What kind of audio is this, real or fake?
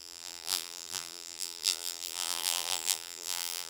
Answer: fake